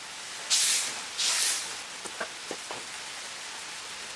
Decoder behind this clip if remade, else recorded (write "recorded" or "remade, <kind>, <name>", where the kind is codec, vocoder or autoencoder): recorded